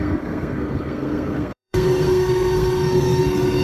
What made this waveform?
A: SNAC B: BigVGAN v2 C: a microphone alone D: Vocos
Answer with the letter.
A